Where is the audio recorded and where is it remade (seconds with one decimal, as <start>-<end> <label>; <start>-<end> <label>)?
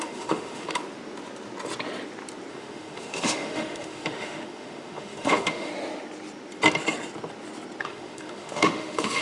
0.0-0.8 remade; 0.8-2.5 recorded; 2.5-5.7 remade; 5.7-7.8 recorded; 7.8-9.2 remade